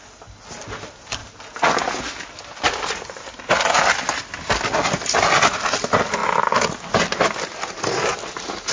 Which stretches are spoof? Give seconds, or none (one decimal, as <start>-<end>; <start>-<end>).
none